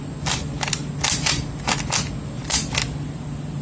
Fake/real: real